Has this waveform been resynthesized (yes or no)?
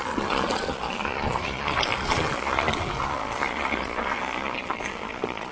yes